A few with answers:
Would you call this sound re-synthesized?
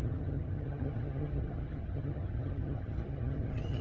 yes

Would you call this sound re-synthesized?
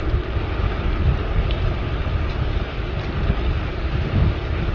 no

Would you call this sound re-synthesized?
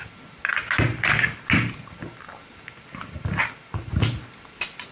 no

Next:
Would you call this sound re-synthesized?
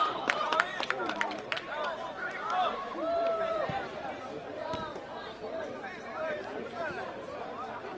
yes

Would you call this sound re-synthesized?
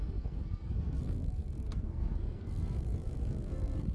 yes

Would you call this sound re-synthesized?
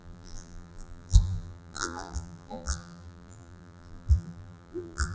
yes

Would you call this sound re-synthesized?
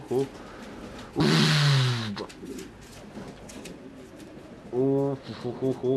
no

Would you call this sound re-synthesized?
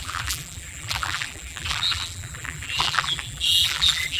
yes